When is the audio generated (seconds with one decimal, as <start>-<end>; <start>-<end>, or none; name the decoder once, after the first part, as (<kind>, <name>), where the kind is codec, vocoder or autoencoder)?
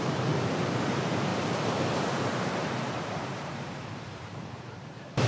0.0-5.3 (vocoder, BigVGAN v2)